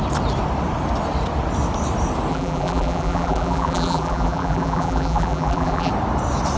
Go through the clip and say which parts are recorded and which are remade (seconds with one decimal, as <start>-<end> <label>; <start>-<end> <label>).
0.0-2.3 recorded; 2.3-5.9 remade; 5.9-6.6 recorded